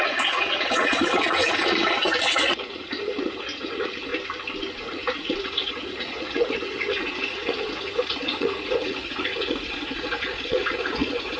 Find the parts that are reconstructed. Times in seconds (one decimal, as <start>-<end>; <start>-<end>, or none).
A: 0.0-4.1; 4.8-11.4